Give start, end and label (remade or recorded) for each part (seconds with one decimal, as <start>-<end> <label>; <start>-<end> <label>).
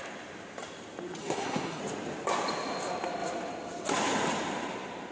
0.0-1.2 recorded; 1.2-1.8 remade; 1.8-5.1 recorded